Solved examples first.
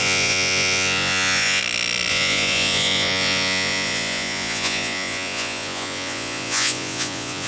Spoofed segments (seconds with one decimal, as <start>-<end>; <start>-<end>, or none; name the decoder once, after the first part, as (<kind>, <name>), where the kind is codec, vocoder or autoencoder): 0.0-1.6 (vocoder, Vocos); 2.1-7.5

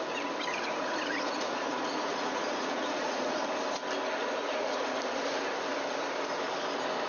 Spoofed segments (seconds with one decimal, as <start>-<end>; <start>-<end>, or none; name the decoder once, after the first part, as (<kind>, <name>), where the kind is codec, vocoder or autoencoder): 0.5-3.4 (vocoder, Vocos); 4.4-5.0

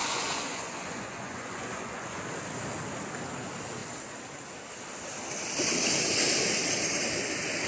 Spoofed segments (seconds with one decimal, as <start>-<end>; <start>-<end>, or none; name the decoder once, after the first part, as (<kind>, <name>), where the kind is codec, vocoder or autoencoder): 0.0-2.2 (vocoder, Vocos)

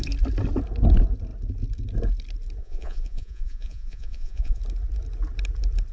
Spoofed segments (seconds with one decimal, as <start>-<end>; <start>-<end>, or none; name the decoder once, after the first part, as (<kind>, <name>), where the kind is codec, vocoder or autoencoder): 2.6-4.6 (vocoder, Vocos)

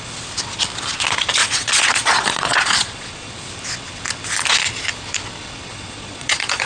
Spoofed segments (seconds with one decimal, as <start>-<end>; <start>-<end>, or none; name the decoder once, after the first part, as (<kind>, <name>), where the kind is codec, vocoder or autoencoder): 1.4-3.3 (vocoder, Vocos); 5.7-6.7

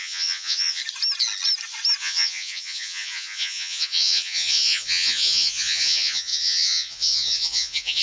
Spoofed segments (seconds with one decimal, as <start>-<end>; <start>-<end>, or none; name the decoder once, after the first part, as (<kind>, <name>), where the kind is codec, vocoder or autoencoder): 0.0-0.8 (vocoder, Vocos); 2.0-8.0

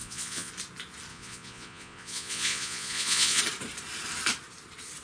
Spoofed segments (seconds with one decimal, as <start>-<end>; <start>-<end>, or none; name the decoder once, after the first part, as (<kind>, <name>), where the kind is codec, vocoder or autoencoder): 0.0-0.5 (vocoder, Vocos); 1.1-3.4

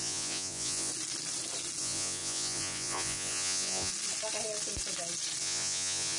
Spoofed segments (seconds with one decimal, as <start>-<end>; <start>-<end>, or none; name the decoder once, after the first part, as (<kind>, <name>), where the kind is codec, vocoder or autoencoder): 0.0-0.9 (vocoder, Vocos); 1.8-3.9; 5.4-6.2